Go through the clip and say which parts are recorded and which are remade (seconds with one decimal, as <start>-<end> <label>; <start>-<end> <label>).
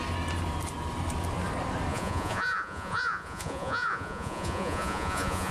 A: 0.0-1.9 recorded; 1.9-5.5 remade